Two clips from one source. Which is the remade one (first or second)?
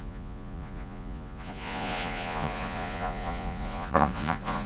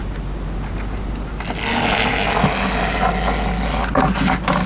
first